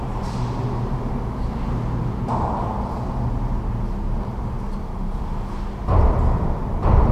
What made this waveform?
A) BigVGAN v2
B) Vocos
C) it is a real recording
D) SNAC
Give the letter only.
C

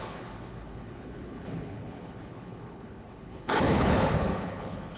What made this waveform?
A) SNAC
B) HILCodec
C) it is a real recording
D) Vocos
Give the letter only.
B